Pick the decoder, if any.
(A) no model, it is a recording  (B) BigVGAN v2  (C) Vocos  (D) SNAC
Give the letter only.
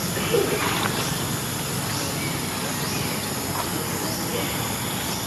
A